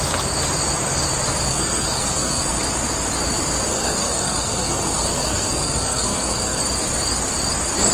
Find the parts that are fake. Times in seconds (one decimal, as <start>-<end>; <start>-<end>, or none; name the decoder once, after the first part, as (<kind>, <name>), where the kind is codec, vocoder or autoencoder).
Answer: 1.5-2.6 (codec, SNAC); 3.7-6.6

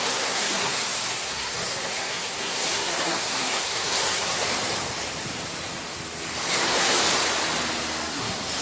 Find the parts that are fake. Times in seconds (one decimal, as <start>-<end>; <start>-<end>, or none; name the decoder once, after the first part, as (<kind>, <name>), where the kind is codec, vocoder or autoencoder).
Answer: 0.0-4.5 (codec, SNAC); 6.5-7.0; 8.0-8.6